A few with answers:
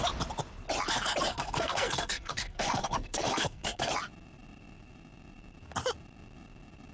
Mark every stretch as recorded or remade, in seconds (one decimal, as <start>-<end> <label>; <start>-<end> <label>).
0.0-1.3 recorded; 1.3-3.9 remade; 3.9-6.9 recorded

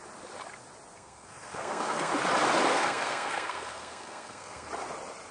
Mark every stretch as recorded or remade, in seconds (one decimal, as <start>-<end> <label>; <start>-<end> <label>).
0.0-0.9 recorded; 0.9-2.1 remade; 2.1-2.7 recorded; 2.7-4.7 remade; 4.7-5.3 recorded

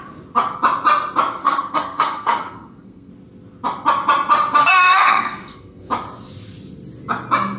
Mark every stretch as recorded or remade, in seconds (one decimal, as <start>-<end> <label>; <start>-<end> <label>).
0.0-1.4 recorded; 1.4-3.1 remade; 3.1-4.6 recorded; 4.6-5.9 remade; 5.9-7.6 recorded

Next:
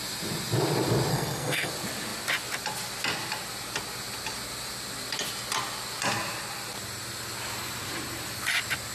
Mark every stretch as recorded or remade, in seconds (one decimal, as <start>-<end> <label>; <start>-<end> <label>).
0.0-1.1 recorded; 1.1-1.7 remade; 1.7-8.9 recorded